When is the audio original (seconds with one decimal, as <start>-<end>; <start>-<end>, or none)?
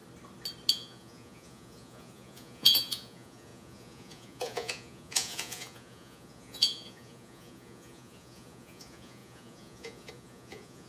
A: 0.0-0.7